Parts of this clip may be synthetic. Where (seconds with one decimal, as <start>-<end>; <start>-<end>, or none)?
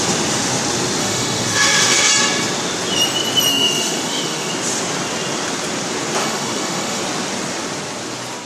1.0-2.1; 3.5-4.5; 6.2-7.0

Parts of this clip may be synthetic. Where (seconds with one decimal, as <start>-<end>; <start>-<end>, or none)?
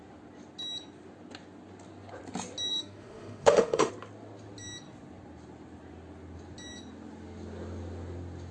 2.7-3.9